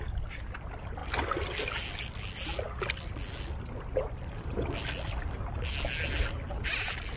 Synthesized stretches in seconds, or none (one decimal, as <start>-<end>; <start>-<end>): none